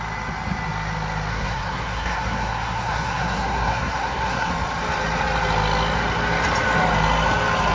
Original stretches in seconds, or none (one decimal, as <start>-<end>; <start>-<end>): 0.0-1.3; 4.5-7.7